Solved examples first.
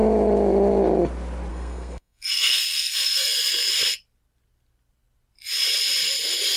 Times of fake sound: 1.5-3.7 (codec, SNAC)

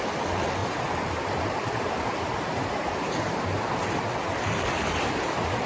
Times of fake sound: 0.6-3.7 (vocoder, BigVGAN v2)